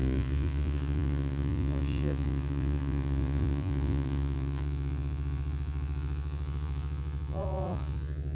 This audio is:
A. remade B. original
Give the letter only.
A